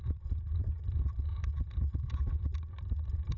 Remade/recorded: remade